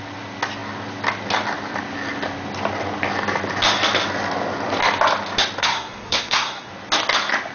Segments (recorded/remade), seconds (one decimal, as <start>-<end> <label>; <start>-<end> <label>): 0.0-5.6 recorded; 5.6-6.7 remade; 6.7-7.5 recorded